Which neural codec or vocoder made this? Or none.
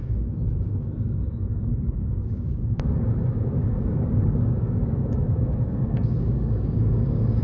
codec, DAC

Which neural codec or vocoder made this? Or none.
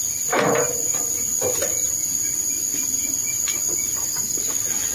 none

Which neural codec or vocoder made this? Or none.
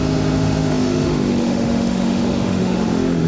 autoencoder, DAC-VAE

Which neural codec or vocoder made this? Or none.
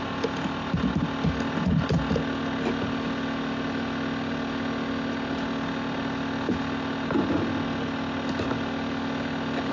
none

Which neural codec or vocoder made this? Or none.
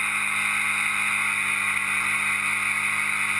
none